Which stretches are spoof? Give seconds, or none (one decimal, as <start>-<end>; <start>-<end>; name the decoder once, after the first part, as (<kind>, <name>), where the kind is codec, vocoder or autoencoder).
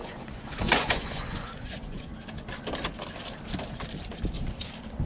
0.0-2.1 (vocoder, Vocos)